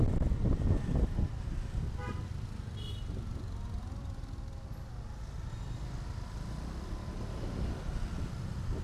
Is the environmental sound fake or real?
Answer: real